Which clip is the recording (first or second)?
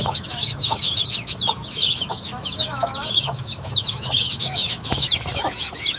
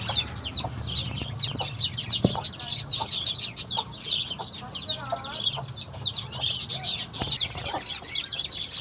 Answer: second